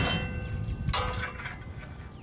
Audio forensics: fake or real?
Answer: real